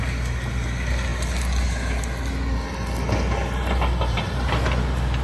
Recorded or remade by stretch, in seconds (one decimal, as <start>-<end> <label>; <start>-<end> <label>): 0.0-5.2 recorded